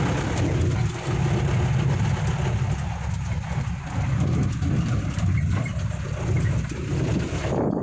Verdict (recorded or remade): recorded